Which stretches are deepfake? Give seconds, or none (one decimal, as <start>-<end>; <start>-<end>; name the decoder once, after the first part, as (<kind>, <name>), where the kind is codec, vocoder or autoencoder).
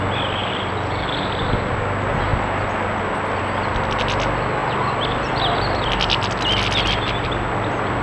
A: 0.4-1.2 (vocoder, BigVGAN v2); 4.6-6.1